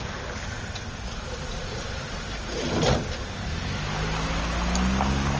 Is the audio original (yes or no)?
yes